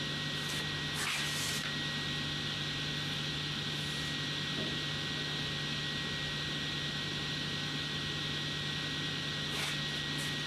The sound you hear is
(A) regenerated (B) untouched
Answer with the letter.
B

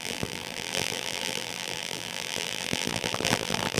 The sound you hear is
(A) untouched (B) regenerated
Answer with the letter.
B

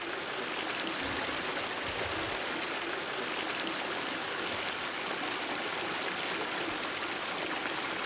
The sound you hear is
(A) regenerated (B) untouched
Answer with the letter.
B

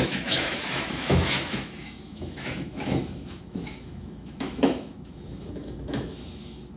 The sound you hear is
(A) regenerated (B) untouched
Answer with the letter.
A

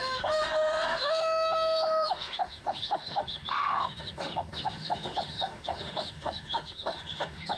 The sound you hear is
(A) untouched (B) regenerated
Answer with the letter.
B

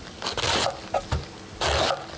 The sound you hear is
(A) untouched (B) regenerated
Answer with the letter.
A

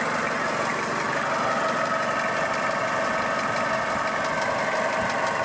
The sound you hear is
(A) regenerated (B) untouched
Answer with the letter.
B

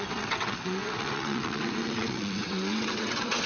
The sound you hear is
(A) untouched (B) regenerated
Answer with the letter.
B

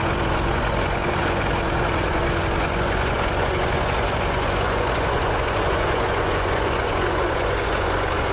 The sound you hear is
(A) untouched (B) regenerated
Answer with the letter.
B